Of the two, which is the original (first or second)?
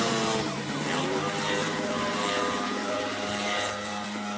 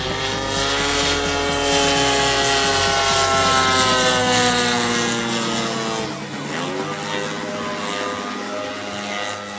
second